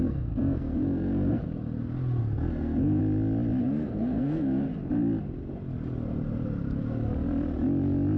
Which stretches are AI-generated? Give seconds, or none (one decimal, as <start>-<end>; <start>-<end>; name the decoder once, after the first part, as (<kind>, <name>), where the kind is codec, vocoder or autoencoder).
0.0-1.4 (codec, SNAC); 2.2-3.0; 3.6-4.7

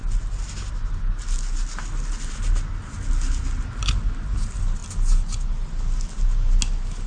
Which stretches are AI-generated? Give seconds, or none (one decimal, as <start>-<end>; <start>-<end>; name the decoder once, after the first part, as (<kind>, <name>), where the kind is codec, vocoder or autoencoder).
none